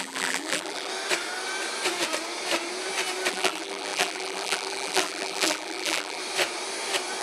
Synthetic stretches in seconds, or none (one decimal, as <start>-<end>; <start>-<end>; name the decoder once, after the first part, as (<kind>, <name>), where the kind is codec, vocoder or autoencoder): 0.0-0.9 (vocoder, BigVGAN v2); 3.3-6.2